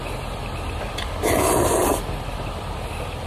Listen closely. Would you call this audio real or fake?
real